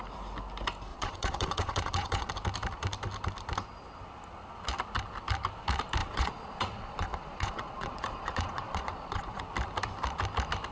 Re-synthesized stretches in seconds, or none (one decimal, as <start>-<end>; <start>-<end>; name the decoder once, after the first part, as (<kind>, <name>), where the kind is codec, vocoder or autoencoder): 0.9-2.3 (vocoder, Vocos); 6.0-9.4